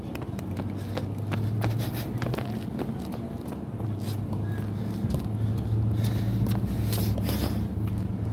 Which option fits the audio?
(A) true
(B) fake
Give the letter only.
A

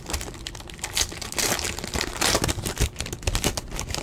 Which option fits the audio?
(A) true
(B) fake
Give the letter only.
A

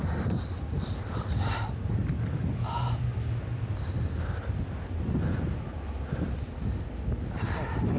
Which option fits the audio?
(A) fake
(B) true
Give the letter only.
B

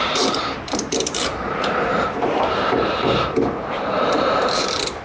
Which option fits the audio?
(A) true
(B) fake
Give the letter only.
B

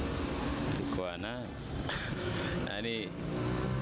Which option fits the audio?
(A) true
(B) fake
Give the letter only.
A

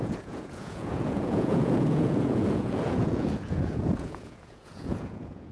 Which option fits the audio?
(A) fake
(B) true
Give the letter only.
A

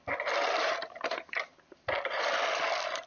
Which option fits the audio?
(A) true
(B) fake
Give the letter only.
B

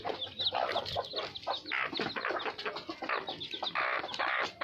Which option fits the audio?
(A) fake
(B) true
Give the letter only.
B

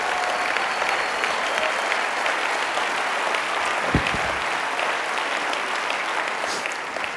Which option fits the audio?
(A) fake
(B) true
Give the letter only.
B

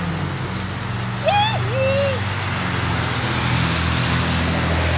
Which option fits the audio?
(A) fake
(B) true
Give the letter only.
B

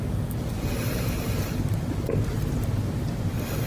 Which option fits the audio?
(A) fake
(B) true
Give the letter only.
A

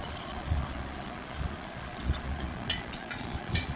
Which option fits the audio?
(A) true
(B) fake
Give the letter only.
B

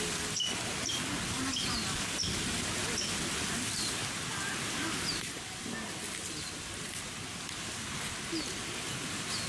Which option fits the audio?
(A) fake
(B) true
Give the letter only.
B